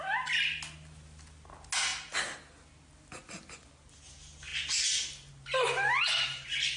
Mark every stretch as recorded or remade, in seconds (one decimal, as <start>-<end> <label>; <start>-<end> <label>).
0.0-6.8 recorded